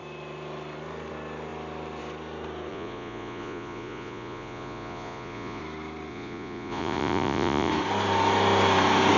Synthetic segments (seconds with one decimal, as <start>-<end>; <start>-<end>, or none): 2.7-5.6; 6.1-7.7